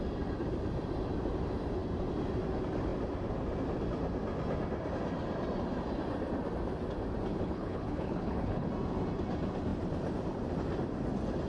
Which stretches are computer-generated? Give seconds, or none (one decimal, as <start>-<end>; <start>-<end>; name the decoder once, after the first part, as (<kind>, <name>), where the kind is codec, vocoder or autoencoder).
7.3-8.7 (codec, HILCodec)